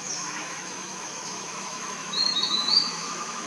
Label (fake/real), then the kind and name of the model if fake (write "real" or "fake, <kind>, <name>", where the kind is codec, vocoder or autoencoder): fake, autoencoder, DAC-VAE